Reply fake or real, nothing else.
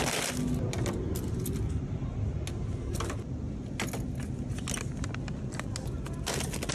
real